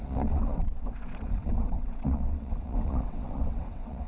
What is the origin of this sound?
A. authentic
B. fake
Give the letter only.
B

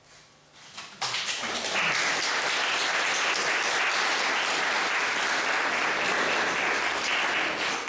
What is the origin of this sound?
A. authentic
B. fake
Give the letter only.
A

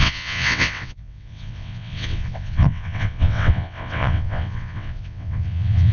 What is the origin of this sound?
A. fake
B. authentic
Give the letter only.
A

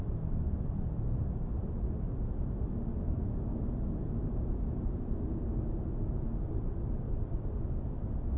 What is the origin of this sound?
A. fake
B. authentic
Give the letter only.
B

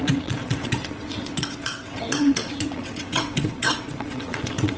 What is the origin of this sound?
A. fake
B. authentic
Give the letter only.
A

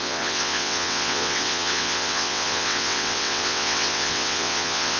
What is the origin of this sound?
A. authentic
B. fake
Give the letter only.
B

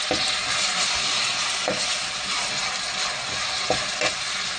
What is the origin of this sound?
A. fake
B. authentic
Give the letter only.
B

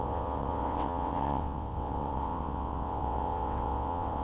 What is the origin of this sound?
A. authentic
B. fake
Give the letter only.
B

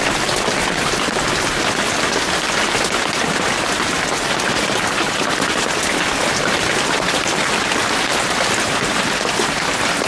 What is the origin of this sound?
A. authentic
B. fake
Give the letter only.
A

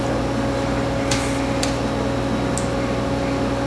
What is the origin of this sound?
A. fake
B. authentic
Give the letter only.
B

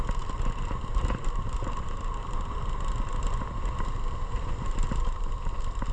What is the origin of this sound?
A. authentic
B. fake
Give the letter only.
A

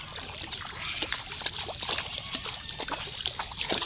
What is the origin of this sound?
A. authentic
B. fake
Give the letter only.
A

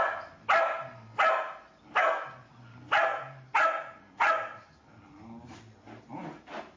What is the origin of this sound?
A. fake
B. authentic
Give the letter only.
B